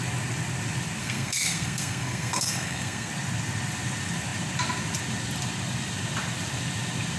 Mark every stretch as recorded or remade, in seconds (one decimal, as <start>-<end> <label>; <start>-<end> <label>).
0.0-1.0 recorded; 1.0-3.1 remade; 3.1-7.2 recorded